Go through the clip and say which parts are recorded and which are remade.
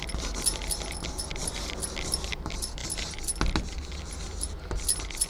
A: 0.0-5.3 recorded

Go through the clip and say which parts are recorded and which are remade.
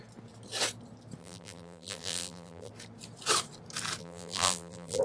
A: 0.0-1.2 recorded; 1.2-2.7 remade; 2.7-4.0 recorded; 4.0-5.0 remade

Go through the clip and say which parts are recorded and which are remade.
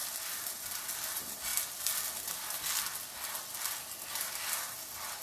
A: 0.0-5.2 recorded